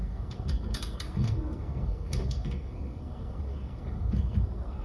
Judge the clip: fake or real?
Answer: fake